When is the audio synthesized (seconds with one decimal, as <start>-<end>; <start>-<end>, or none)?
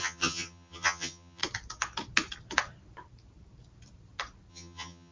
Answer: 0.0-1.4; 4.5-5.1